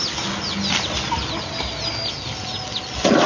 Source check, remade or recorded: recorded